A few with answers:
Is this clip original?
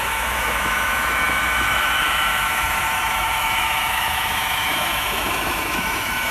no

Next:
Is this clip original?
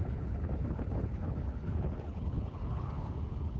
no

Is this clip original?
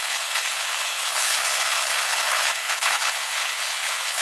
no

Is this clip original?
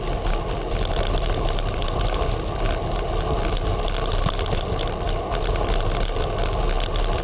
yes